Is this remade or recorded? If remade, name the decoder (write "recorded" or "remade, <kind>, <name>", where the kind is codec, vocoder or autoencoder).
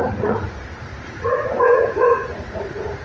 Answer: remade, vocoder, Vocos